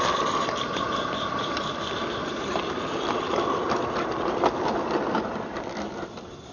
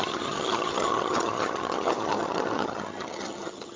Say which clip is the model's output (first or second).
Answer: second